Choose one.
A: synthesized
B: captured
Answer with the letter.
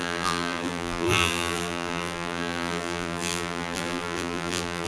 A